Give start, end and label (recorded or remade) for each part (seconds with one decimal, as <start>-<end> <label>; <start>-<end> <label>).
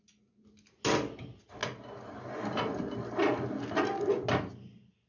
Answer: 0.0-5.1 recorded